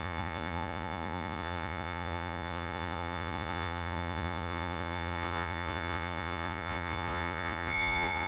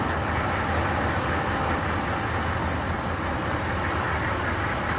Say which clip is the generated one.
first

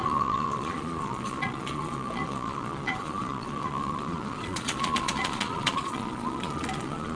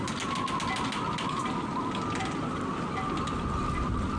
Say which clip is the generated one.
first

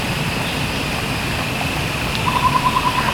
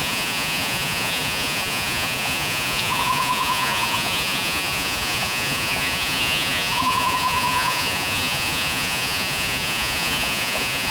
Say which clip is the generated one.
second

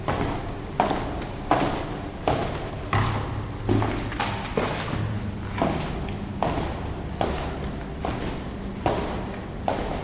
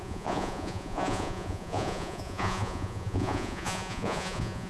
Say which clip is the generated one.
second